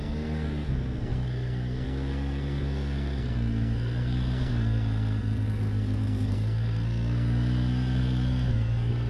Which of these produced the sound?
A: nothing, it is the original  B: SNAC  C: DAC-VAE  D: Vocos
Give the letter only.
B